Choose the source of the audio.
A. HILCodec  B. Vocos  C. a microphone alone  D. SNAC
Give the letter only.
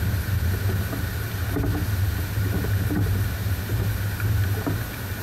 C